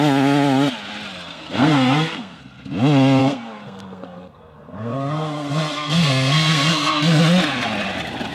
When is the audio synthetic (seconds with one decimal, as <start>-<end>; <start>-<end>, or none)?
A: 1.3-2.4; 3.2-7.2